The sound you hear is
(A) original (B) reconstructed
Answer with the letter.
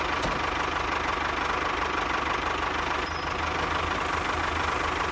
A